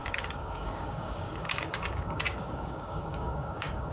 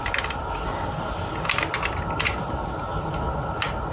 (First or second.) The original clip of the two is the second